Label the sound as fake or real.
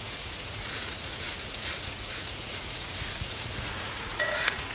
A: fake